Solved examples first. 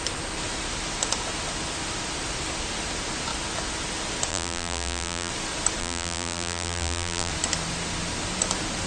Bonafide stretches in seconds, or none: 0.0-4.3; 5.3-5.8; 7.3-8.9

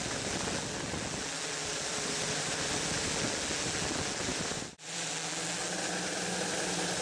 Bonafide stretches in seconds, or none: 0.0-1.6; 3.1-4.3; 5.1-7.0